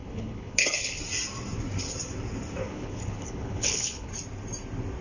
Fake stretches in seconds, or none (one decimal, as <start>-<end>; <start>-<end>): 0.0-1.0; 2.6-4.1